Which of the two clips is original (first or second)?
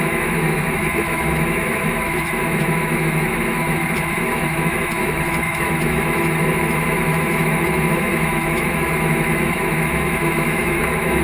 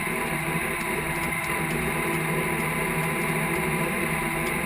second